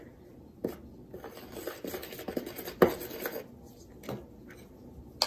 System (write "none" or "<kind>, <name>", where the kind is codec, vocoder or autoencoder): none